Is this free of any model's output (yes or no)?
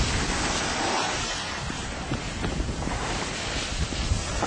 yes